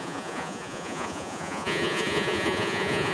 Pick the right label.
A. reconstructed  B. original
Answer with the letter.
A